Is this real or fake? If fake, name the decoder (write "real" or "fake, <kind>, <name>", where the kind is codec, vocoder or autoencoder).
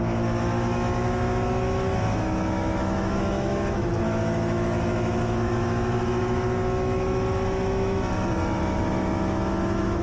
fake, autoencoder, DAC-VAE